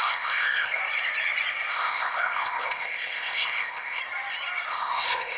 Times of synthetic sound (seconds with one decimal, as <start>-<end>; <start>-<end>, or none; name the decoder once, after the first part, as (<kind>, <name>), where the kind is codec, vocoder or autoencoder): 0.0-0.8 (codec, ZipCodec); 1.7-4.0; 4.7-5.4